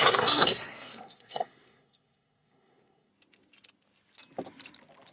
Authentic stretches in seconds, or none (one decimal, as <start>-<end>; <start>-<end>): 3.1-5.1